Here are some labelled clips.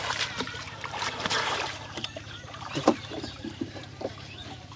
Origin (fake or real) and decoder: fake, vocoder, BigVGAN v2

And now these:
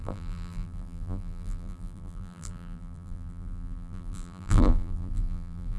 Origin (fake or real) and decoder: fake, vocoder, BigVGAN v2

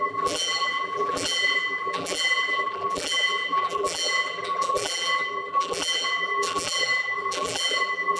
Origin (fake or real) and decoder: fake, vocoder, BigVGAN v2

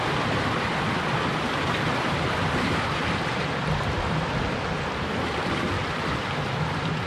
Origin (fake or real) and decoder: fake, vocoder, BigVGAN v2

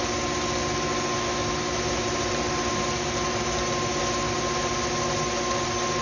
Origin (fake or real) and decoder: real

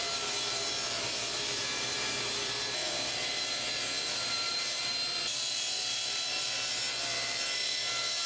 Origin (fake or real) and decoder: fake, vocoder, BigVGAN v2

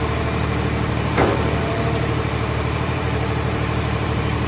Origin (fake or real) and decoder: fake, vocoder, BigVGAN v2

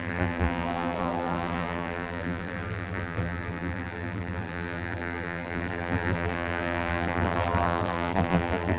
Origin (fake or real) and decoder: fake, vocoder, BigVGAN v2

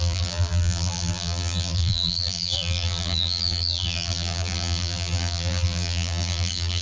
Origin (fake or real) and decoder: fake, vocoder, BigVGAN v2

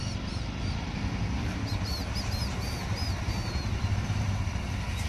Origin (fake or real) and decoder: real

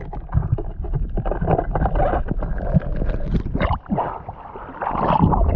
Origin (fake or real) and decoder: real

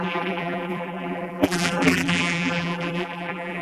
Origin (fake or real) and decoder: fake, vocoder, BigVGAN v2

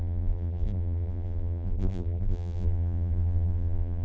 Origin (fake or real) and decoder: fake, vocoder, BigVGAN v2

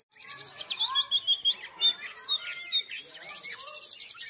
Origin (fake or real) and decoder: real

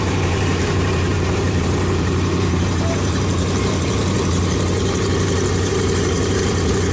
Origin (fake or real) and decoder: fake, vocoder, BigVGAN v2